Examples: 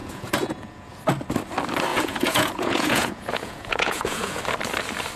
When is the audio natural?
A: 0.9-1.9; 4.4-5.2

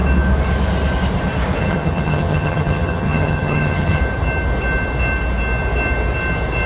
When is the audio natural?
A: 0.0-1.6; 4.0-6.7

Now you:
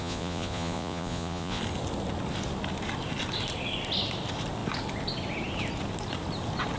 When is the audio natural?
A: 1.6-6.8

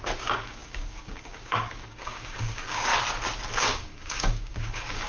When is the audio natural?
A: 2.9-3.6

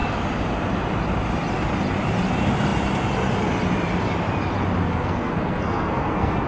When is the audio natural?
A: 0.0-4.9

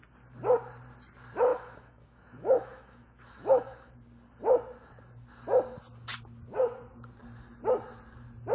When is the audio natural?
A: 0.0-1.5; 3.9-8.5

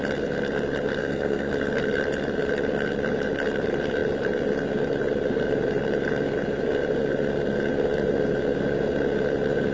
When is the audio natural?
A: 0.0-1.0; 1.5-9.7